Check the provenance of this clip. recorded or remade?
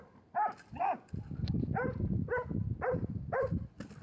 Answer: recorded